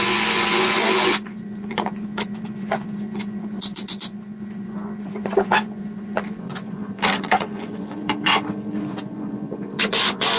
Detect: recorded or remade remade